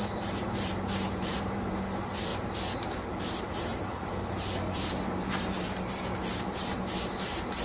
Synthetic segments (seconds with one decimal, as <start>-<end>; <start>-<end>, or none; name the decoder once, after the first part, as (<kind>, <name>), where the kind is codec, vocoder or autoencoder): 0.0-2.3 (vocoder, BigVGAN v2); 3.4-4.1; 4.7-7.6